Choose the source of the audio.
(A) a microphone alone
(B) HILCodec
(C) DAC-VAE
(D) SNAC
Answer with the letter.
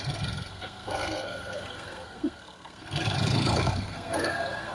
D